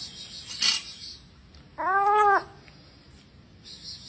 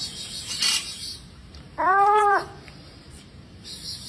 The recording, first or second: first